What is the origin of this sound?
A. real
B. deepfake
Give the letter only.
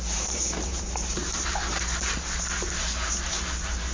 B